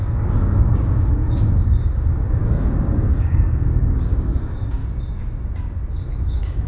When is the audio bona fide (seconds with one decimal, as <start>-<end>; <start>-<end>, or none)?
4.8-6.3